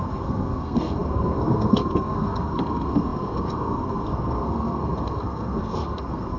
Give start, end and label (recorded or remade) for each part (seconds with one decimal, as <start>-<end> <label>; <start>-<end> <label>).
0.0-6.4 remade